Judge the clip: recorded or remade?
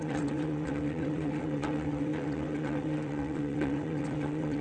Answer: remade